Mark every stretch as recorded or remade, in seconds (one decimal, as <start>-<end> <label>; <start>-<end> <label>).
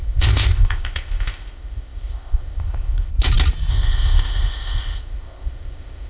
0.0-3.1 remade; 3.1-3.7 recorded; 3.7-6.1 remade